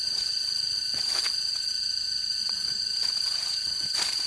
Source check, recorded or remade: remade